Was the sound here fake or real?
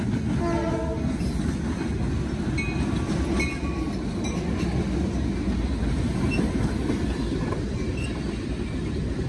real